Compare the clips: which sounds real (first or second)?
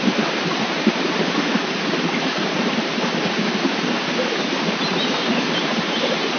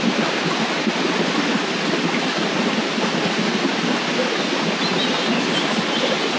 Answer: second